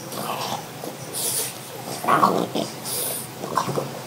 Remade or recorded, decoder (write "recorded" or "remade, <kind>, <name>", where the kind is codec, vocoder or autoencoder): remade, vocoder, BigVGAN v2